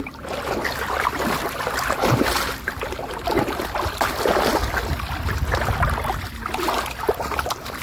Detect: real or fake real